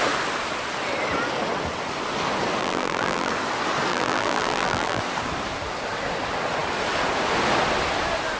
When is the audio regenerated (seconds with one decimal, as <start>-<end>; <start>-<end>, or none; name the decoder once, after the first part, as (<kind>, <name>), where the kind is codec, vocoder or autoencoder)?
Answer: 2.6-3.3 (vocoder, BigVGAN v2); 3.9-5.0